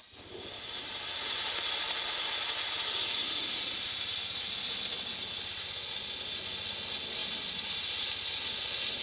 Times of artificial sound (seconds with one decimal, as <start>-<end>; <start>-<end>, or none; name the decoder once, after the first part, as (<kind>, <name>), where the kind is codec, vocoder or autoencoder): none